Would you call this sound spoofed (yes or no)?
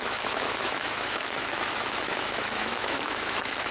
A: yes